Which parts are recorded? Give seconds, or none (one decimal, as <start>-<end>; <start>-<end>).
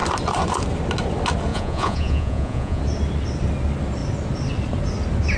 0.0-1.5; 2.8-5.4